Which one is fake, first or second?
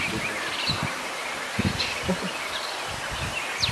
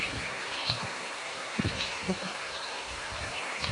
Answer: second